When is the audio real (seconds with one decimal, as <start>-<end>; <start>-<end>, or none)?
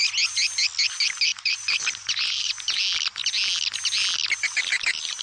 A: 0.0-1.3; 2.8-5.2